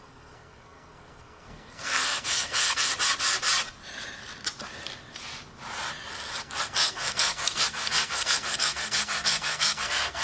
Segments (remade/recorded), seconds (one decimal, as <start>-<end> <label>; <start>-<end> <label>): 0.0-2.9 remade; 2.9-6.4 recorded; 6.4-10.2 remade